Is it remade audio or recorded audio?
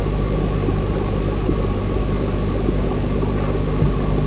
recorded